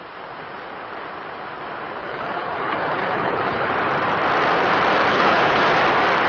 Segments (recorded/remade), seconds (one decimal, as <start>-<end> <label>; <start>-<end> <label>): 0.0-2.0 recorded; 2.0-3.7 remade; 3.7-5.1 recorded; 5.1-5.6 remade; 5.6-6.3 recorded